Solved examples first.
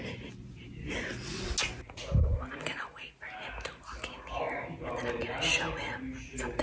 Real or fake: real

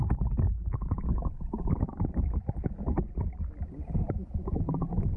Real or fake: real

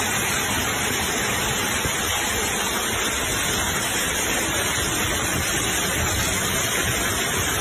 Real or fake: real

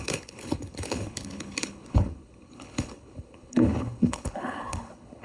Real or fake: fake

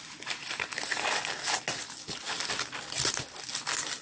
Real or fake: real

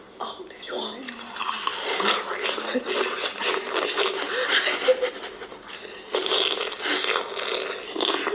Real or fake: real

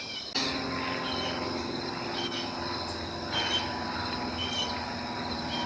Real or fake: real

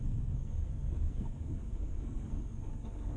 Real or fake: fake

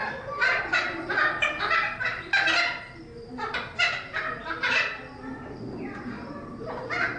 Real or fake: real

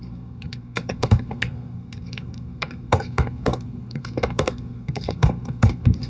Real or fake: fake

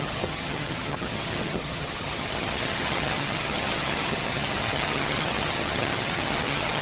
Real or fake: fake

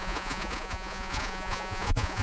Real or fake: fake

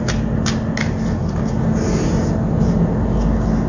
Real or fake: real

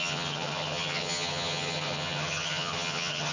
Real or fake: fake